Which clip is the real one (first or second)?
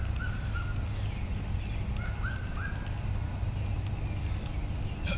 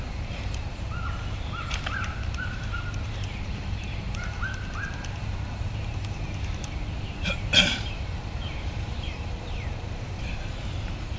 first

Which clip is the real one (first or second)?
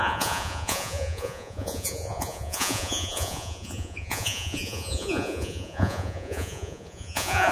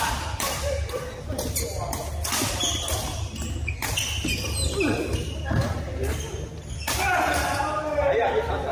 second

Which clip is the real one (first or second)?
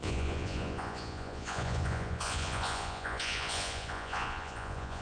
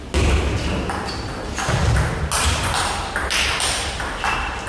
second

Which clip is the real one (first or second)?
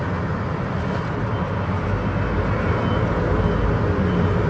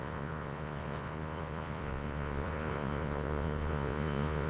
first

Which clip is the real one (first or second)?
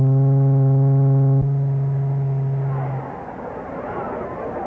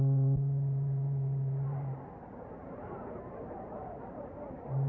first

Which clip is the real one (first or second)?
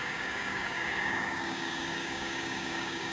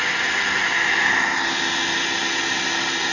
second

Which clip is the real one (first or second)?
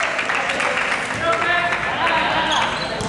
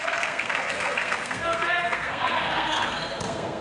first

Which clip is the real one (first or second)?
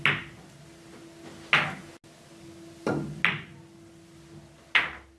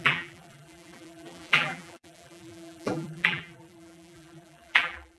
first